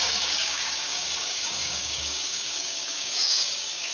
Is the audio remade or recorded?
remade